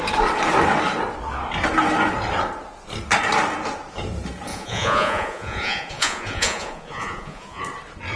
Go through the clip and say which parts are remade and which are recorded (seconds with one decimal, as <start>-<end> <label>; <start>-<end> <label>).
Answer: 0.0-4.5 recorded; 4.5-7.6 remade; 7.6-8.2 recorded

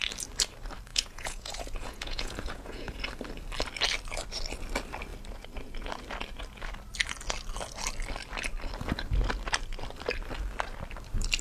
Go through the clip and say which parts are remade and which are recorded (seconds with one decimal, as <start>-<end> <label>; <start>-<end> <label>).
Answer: 0.0-0.9 recorded; 0.9-3.0 remade; 3.0-11.4 recorded

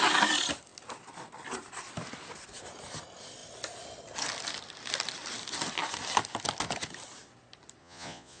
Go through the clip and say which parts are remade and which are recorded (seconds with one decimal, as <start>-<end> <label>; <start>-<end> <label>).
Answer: 0.0-7.8 recorded; 7.8-8.4 remade

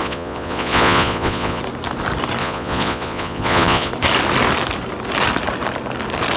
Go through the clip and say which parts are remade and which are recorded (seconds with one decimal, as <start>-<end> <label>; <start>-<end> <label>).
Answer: 0.0-1.6 remade; 1.6-2.4 recorded; 2.4-3.9 remade; 3.9-6.4 recorded